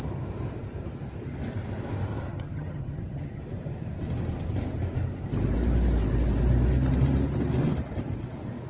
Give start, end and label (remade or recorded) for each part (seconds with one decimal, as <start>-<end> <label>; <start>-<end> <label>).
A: 0.0-2.3 recorded; 2.3-3.4 remade; 3.4-8.7 recorded